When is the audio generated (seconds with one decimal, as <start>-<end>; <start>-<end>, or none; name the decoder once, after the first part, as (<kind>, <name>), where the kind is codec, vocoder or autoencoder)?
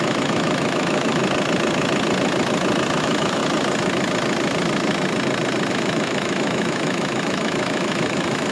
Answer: 0.0-1.2 (autoencoder, DAC-VAE); 3.0-3.4; 5.7-8.5